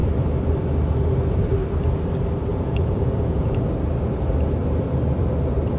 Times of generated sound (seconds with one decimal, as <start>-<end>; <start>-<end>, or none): 2.5-3.6